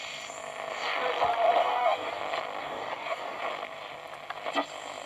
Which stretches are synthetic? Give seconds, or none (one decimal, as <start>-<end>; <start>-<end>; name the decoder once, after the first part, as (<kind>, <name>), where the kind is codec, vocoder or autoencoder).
1.6-2.2 (codec, DAC); 2.6-3.4